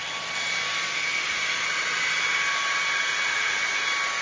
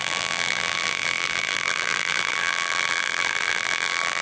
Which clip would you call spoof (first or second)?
second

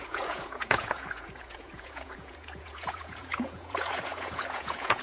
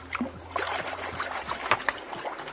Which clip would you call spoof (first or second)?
first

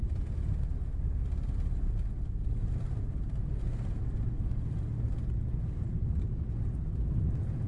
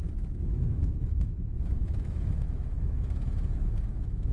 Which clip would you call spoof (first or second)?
second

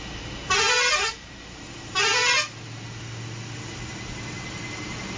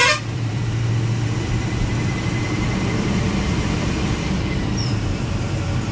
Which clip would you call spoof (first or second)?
second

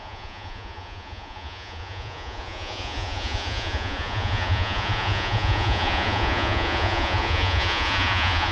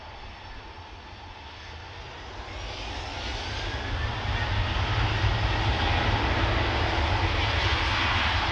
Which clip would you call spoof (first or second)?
first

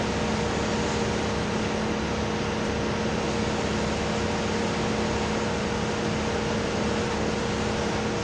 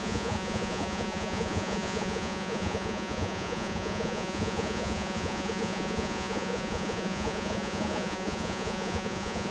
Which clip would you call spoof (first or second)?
second